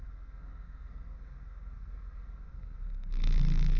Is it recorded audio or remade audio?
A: remade